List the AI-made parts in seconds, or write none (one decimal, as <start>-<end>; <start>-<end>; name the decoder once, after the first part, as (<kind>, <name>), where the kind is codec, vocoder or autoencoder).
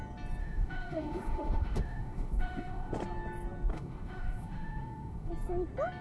0.4-2.9 (autoencoder, DAC-VAE); 3.7-5.3